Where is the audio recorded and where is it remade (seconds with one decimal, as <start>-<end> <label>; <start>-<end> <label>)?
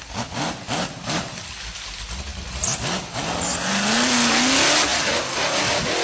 0.0-6.0 recorded